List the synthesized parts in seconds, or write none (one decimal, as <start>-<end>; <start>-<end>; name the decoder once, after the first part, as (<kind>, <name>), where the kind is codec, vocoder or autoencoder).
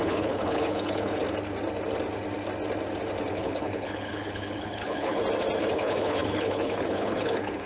0.0-1.2 (codec, HILCodec); 3.3-5.2; 5.7-7.7